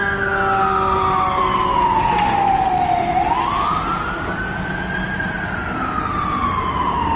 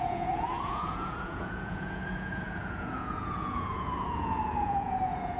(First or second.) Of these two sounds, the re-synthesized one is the second